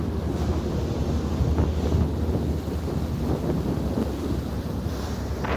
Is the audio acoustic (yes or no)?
yes